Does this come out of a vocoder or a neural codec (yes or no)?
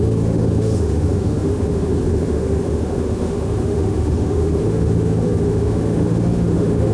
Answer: yes